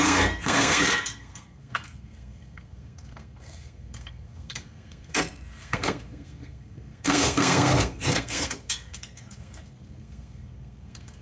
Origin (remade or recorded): remade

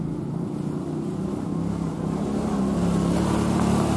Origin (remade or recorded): recorded